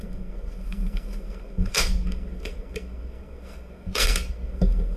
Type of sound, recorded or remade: remade